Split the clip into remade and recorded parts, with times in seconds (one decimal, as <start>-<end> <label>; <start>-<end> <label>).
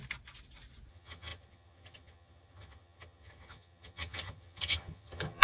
0.0-0.9 recorded; 0.9-5.4 remade